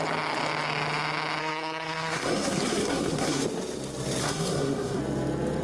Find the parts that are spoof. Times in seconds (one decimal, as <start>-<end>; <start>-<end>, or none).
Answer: 1.4-3.4; 4.2-5.0